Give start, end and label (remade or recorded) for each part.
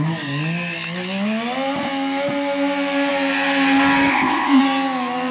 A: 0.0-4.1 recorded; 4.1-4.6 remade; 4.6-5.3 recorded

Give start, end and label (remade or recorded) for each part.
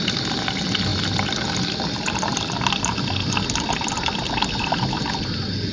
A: 0.0-5.7 recorded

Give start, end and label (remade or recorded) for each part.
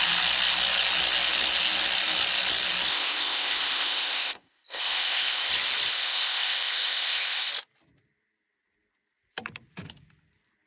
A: 0.0-2.9 recorded; 2.9-5.5 remade; 5.5-5.9 recorded; 5.9-7.5 remade; 7.5-10.7 recorded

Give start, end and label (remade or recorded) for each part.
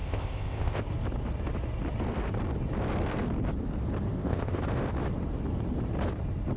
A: 0.0-0.8 remade; 0.8-4.1 recorded; 4.1-4.6 remade; 4.6-6.6 recorded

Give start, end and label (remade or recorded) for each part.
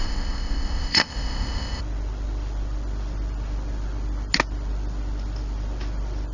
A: 0.0-1.8 remade; 1.8-6.3 recorded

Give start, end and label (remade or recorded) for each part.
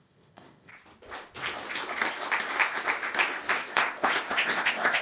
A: 0.0-0.7 remade; 0.7-3.7 recorded; 3.7-5.0 remade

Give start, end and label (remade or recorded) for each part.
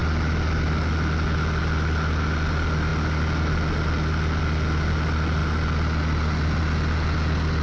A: 0.0-7.6 recorded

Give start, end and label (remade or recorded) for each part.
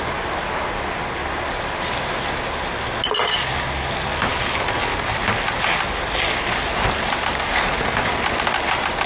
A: 0.0-9.1 recorded